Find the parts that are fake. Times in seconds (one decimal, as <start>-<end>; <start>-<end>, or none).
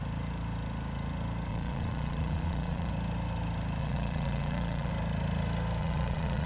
1.5-2.9; 3.8-4.9; 5.8-6.5